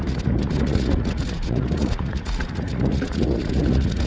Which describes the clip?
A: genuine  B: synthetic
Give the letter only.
B